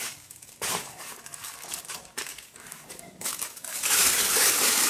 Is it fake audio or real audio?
fake